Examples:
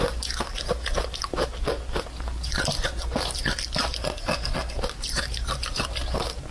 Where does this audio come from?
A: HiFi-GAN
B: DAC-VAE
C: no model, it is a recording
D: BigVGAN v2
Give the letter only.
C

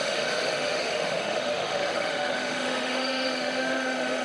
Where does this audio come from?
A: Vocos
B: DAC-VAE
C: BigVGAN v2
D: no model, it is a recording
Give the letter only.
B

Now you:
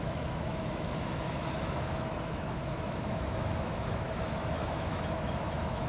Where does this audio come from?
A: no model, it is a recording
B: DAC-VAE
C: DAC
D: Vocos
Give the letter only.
B